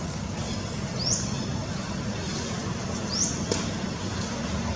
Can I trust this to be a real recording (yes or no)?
yes